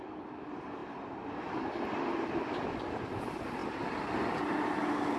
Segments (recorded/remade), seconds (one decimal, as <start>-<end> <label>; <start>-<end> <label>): 0.0-5.2 recorded